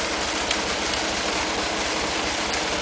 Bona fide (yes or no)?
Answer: yes